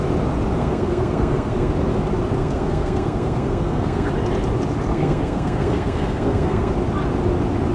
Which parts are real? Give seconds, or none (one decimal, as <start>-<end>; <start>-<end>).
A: 0.0-0.6; 1.7-2.4; 4.1-4.9; 6.7-7.7